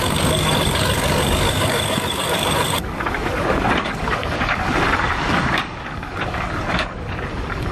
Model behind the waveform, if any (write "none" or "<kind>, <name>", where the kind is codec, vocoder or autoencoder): codec, DAC